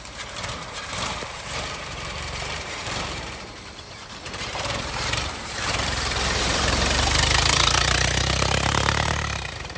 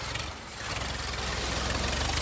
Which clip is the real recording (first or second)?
second